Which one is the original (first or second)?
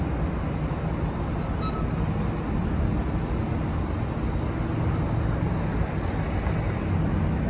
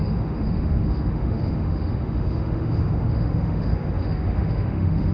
first